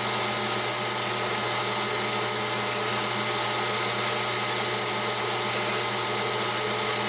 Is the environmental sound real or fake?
real